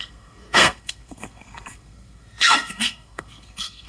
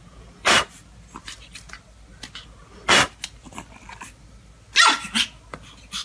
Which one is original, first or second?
second